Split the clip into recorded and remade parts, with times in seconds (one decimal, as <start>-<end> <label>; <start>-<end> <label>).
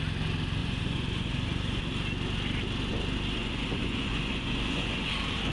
0.0-0.6 recorded; 0.6-1.8 remade; 1.8-3.4 recorded; 3.4-5.1 remade; 5.1-5.5 recorded